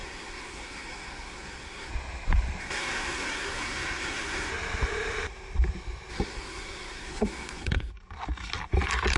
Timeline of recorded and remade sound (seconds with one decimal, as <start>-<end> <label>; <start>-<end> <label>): 0.0-1.9 remade; 1.9-2.6 recorded; 2.6-4.5 remade; 4.5-6.1 recorded; 6.1-7.9 remade; 7.9-9.2 recorded